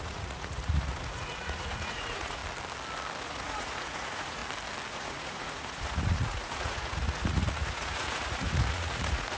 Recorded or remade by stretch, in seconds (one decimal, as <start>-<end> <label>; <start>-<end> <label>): 0.0-2.4 remade; 2.4-3.2 recorded; 3.2-4.4 remade; 4.4-4.9 recorded; 4.9-9.4 remade